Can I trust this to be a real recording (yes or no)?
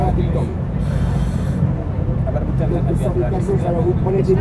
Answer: no